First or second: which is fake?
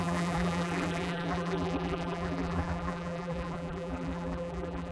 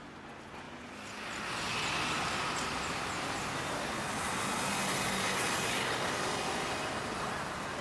first